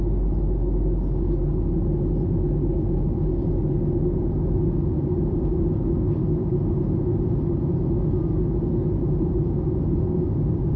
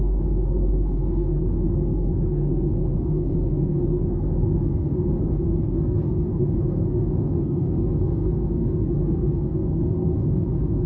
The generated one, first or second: second